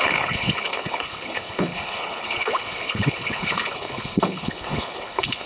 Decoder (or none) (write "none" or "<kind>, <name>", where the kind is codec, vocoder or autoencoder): codec, HILCodec